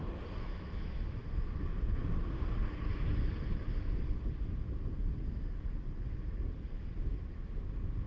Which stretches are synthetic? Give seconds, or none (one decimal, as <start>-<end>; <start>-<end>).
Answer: 0.5-1.2